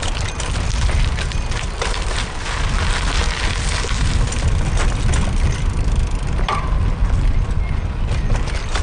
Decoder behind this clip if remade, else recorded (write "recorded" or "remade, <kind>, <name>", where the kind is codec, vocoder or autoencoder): recorded